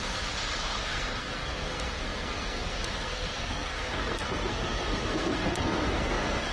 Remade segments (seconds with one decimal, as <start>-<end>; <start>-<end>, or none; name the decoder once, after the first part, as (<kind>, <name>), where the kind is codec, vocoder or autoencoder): 0.0-6.5 (codec, SNAC)